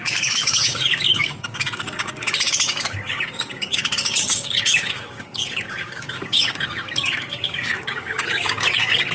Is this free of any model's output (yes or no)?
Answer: no